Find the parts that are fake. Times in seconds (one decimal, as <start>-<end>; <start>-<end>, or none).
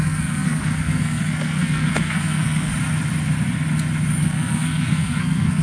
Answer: 0.0-2.7; 4.2-5.6